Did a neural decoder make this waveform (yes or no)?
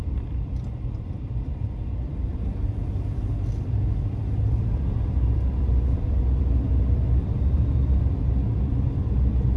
yes